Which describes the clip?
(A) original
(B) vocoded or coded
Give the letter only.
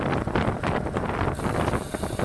A